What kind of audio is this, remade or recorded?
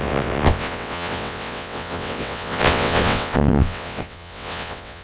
remade